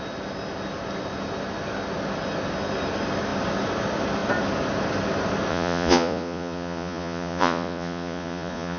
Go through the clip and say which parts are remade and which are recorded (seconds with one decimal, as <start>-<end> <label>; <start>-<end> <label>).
0.0-5.5 recorded; 5.5-8.8 remade